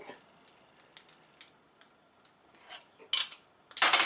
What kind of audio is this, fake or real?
real